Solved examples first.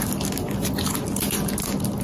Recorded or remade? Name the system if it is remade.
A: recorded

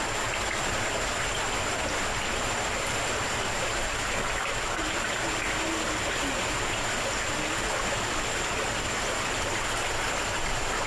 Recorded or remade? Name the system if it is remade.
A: recorded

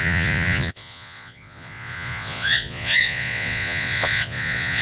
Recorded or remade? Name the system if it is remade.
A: remade, vocoder, Vocos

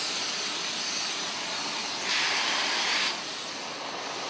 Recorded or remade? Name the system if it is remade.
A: recorded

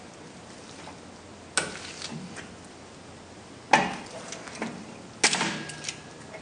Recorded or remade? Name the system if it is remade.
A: recorded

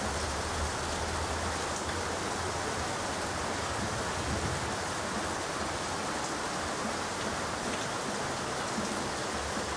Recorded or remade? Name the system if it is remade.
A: recorded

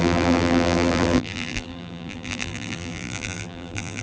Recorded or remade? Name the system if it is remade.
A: remade, vocoder, BigVGAN v2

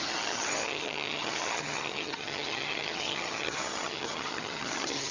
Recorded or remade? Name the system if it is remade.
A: remade, vocoder, HiFi-GAN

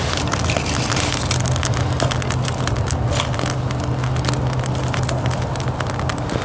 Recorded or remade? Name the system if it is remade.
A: recorded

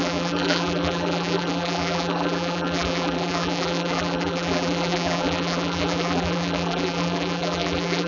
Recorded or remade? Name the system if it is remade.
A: remade, vocoder, BigVGAN v2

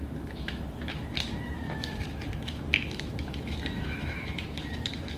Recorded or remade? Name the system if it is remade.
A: remade, autoencoder, DAC-VAE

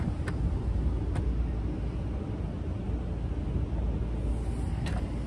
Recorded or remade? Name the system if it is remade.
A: recorded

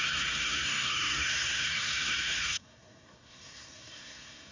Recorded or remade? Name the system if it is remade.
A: remade, codec, SNAC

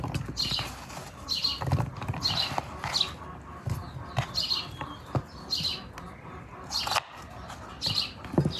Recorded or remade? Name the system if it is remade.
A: recorded